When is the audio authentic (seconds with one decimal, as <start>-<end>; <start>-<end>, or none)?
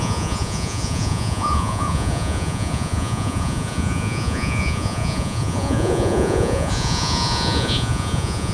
none